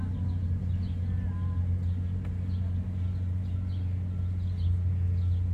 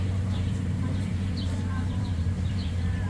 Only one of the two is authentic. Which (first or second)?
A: first